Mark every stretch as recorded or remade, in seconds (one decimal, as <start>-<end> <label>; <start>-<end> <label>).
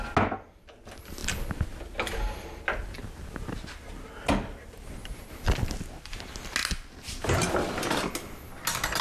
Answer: 0.0-9.0 recorded